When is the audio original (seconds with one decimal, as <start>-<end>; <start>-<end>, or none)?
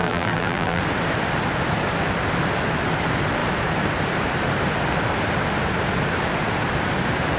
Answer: 0.8-7.4